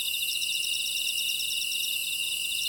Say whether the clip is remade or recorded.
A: recorded